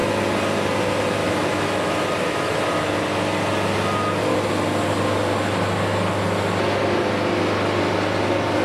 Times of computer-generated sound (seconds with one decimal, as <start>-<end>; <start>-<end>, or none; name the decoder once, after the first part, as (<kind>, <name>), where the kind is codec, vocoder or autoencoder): 1.2-2.9 (autoencoder, DAC-VAE)